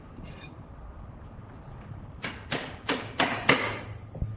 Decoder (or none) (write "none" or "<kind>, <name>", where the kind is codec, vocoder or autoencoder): none